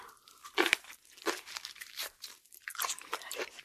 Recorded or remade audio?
remade